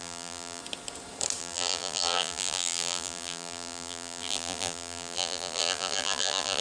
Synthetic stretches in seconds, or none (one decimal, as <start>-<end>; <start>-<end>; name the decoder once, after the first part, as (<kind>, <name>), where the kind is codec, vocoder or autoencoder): 0.0-0.6 (vocoder, BigVGAN v2); 1.4-6.6